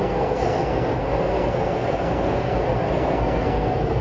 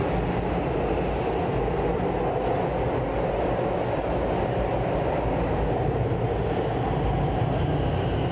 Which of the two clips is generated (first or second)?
first